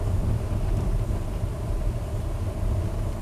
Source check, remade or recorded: recorded